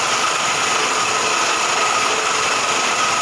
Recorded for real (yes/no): yes